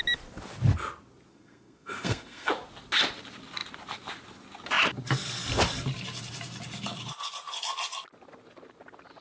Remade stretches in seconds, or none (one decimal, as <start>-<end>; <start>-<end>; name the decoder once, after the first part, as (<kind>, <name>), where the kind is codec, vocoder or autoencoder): 1.3-2.5 (codec, SNAC)